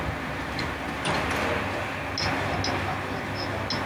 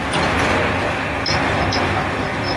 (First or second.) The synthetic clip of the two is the second